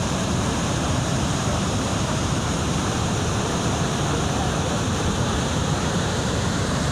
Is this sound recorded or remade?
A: remade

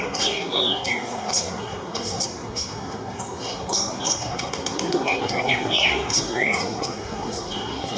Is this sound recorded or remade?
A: remade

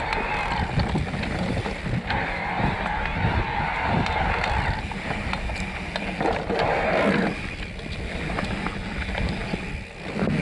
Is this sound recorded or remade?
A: recorded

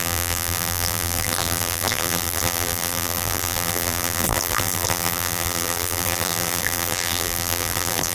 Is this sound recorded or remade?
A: remade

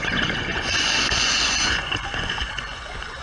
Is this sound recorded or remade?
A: remade